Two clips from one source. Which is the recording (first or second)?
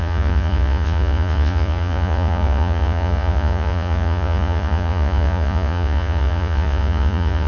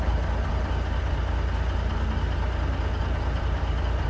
second